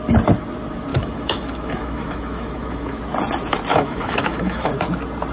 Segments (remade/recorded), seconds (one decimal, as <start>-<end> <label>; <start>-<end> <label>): 0.0-0.9 recorded; 0.9-3.0 remade; 3.0-3.7 recorded; 3.7-4.7 remade; 4.7-5.3 recorded